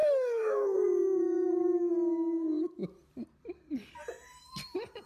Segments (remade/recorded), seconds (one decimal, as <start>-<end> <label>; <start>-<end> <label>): 0.0-1.9 remade; 1.9-5.1 recorded